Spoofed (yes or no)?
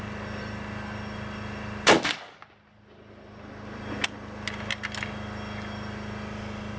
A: no